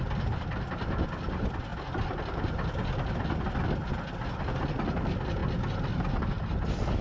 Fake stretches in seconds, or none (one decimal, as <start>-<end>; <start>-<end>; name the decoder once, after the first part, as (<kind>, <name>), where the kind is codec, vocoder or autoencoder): none